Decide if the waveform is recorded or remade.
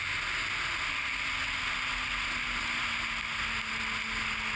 recorded